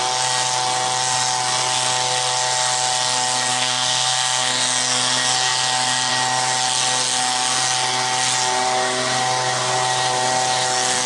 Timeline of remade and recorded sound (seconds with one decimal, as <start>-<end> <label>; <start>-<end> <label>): 0.0-3.5 recorded; 3.5-4.5 remade; 4.5-11.1 recorded